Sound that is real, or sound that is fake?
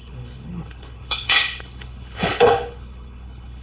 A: fake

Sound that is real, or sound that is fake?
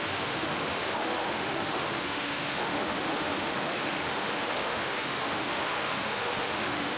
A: fake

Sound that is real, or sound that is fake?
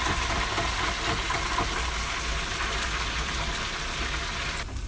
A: real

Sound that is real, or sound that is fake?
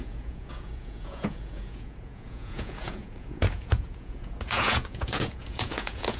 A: fake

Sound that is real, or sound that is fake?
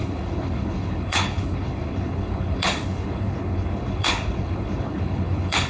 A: fake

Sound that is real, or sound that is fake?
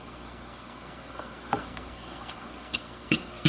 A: fake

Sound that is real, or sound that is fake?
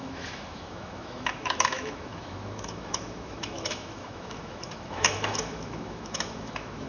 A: fake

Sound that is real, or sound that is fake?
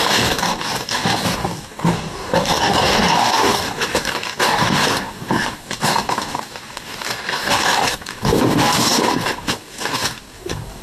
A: fake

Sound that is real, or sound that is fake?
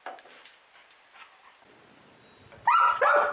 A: real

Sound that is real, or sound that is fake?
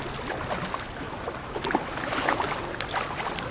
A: real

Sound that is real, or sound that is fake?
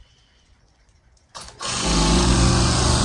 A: fake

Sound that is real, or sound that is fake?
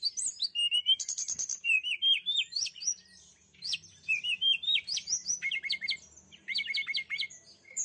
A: fake